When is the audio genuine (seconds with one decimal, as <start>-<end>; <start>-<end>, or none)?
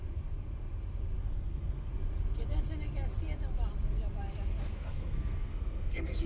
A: 0.0-1.2; 1.9-4.6